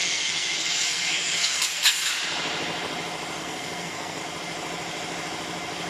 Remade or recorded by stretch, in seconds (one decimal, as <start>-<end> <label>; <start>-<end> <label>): 0.0-2.1 remade; 2.1-3.4 recorded; 3.4-4.2 remade; 4.2-5.9 recorded